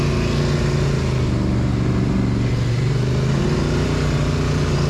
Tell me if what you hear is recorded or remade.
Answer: recorded